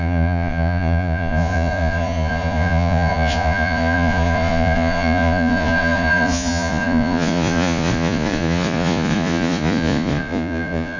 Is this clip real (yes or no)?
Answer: no